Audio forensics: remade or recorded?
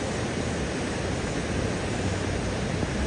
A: recorded